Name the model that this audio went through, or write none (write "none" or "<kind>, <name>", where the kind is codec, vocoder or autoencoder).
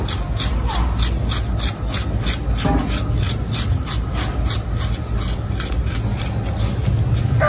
none